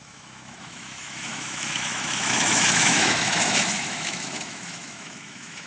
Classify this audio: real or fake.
fake